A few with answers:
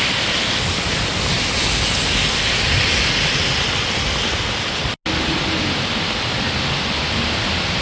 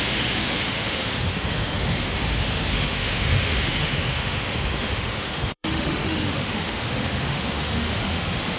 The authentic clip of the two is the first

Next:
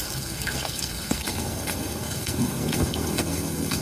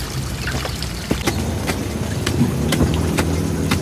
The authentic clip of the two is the second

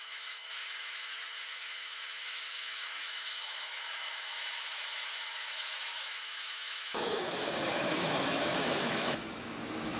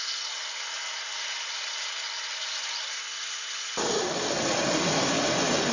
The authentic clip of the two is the second